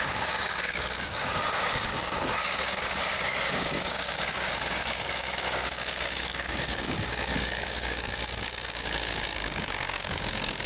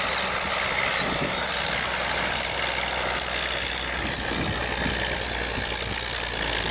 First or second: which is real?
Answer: second